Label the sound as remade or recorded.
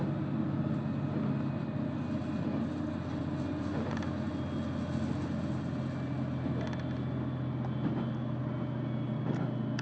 recorded